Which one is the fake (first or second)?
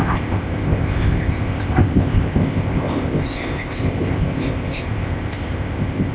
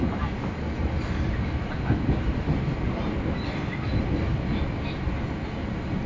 first